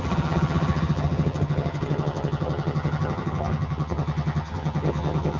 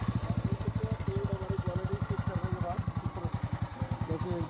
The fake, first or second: first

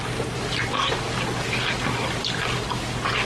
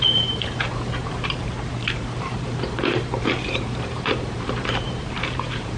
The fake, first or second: second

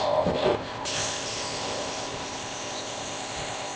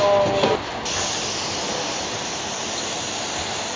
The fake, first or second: first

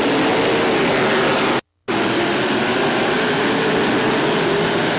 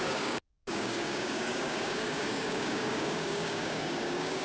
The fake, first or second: second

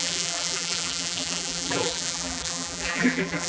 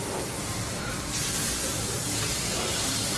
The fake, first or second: first